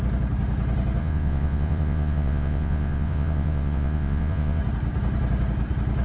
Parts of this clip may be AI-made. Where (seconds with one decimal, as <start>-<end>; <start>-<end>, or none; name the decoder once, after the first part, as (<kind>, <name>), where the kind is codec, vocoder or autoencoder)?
1.0-4.6 (vocoder, Vocos)